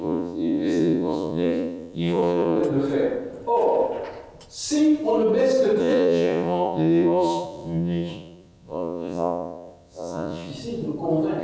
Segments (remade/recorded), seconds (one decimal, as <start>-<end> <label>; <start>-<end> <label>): 0.0-2.6 remade; 2.6-5.8 recorded; 5.8-10.5 remade; 10.5-11.4 recorded